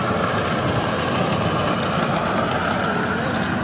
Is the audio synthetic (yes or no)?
no